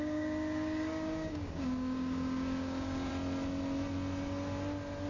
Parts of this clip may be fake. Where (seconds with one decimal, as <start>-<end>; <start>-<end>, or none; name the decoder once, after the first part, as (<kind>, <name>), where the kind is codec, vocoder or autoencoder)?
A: 0.0-3.1 (codec, DAC)